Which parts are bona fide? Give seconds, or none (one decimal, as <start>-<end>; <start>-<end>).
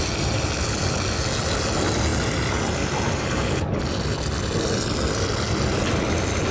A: 0.0-6.5